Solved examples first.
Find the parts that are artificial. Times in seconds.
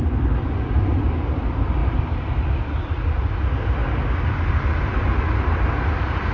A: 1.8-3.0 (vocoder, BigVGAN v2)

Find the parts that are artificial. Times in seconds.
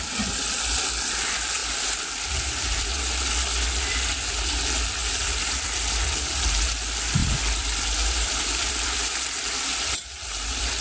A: 1.6-3.3 (vocoder, BigVGAN v2); 5.0-5.9; 7.2-10.8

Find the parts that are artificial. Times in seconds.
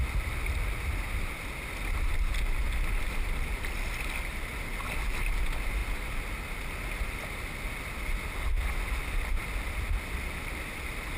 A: none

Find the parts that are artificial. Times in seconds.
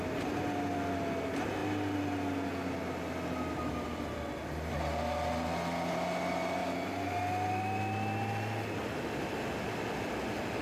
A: 6.6-7.2 (vocoder, BigVGAN v2)